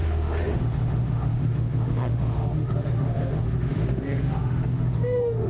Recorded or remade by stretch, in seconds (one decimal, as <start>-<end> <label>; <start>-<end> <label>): 0.0-5.5 remade